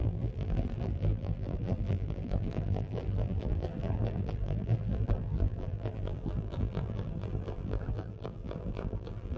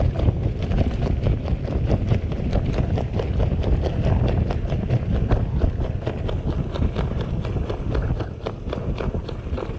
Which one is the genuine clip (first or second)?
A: second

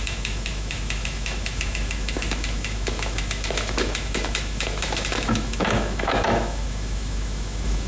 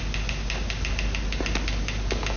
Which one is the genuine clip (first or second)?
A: second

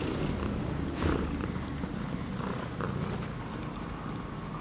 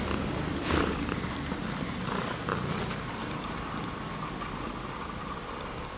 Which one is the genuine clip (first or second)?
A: first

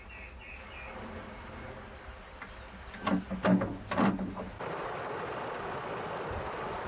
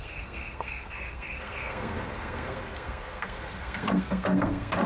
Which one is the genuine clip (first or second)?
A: first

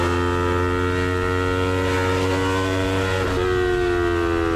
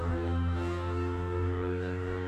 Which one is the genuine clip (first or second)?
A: first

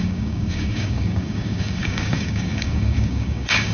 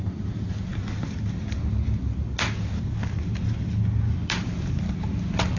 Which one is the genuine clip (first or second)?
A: second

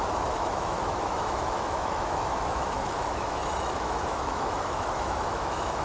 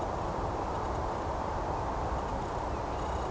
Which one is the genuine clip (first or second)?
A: second